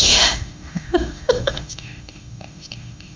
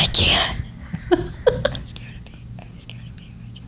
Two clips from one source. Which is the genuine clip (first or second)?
second